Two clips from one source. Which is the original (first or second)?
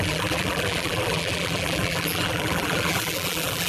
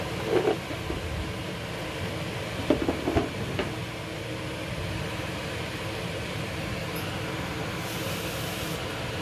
second